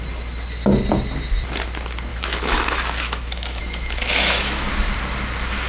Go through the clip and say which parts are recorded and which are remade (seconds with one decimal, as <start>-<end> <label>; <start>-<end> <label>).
0.0-2.1 recorded; 2.1-4.7 remade; 4.7-5.7 recorded